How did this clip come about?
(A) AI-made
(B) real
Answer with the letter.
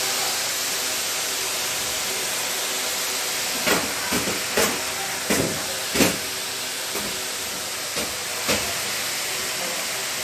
B